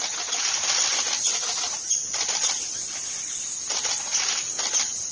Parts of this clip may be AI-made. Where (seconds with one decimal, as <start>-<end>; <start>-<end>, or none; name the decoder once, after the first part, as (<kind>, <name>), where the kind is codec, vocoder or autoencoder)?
none